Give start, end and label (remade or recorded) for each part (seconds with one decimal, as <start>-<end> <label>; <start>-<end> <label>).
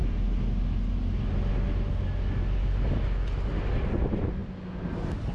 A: 0.0-5.3 recorded